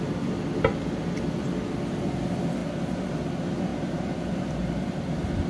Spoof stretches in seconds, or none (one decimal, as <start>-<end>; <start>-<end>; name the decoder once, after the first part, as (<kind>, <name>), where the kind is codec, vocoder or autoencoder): 3.7-5.0 (vocoder, BigVGAN v2)